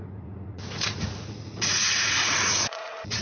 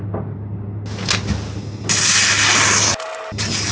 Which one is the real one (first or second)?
second